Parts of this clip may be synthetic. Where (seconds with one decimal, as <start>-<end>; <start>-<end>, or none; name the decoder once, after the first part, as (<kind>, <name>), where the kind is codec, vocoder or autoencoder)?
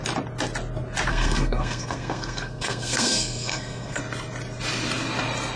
1.1-4.0 (codec, SNAC)